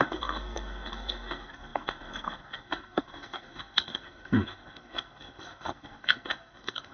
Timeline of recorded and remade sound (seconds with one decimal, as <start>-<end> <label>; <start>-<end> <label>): 0.0-6.9 remade